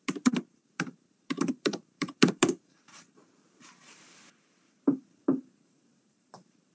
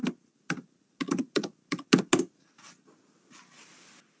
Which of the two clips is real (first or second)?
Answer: second